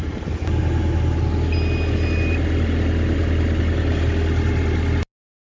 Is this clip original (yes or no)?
yes